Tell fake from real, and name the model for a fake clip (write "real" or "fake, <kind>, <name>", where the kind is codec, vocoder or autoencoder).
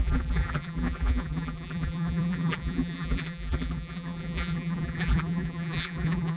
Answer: fake, vocoder, BigVGAN v2